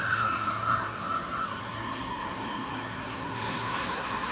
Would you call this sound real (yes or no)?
no